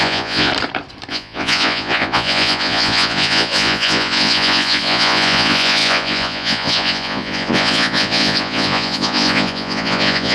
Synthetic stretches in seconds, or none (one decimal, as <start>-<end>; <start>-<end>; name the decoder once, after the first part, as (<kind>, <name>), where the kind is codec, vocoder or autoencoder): 0.0-0.5 (vocoder, Vocos); 1.1-10.3